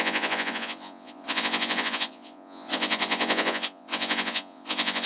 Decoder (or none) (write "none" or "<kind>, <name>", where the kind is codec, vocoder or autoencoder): vocoder, Vocos